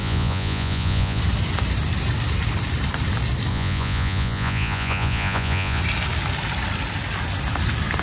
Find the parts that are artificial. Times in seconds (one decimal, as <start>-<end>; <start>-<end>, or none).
0.0-1.2; 3.5-5.8